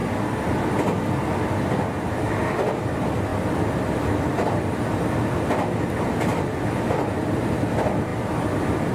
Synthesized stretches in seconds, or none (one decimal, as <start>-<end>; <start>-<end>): none